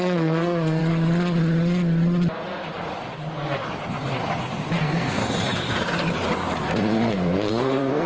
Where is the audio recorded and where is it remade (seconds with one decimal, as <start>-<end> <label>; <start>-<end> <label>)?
0.0-0.8 remade; 0.8-4.8 recorded; 4.8-5.2 remade; 5.2-7.5 recorded; 7.5-8.1 remade